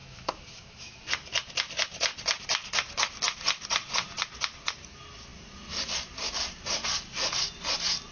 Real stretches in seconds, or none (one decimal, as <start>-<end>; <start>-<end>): 1.0-8.1